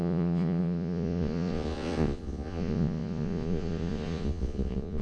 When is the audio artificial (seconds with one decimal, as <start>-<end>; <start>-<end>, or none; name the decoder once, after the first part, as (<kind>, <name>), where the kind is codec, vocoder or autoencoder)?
0.0-5.0 (vocoder, Vocos)